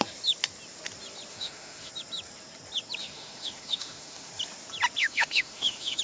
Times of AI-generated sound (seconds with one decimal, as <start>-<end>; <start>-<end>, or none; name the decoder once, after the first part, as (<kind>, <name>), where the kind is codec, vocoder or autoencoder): 1.3-1.9 (autoencoder, DAC-VAE); 3.0-4.3; 5.0-6.0